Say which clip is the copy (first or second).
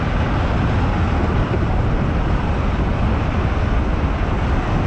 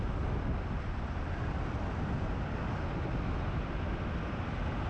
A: second